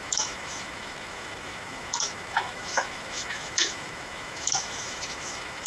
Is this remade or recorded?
remade